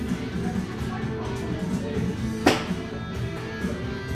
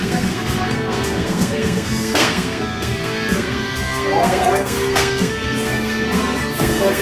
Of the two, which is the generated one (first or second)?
second